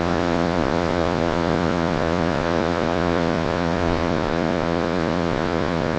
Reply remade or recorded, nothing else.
remade